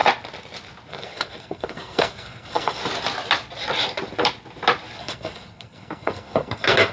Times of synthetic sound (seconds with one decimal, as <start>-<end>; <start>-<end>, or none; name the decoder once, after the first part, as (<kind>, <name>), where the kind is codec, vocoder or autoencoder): 0.9-2.8 (codec, SNAC); 5.0-6.9